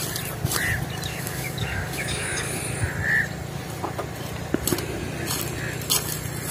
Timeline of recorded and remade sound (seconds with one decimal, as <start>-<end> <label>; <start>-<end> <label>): 0.0-1.1 recorded; 1.1-2.6 remade; 2.6-6.5 recorded